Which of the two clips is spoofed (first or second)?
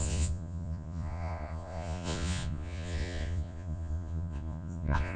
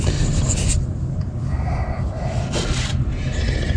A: first